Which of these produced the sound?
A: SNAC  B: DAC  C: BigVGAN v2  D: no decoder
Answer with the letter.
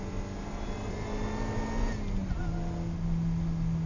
D